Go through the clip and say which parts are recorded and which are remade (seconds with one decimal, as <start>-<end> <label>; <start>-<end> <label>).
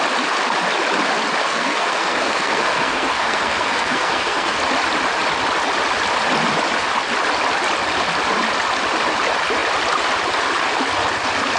0.0-1.4 recorded; 1.4-4.6 remade; 4.6-11.6 recorded